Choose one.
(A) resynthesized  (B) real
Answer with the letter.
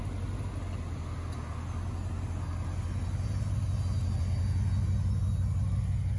B